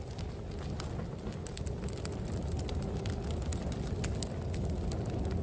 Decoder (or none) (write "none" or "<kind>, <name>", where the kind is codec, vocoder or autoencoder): none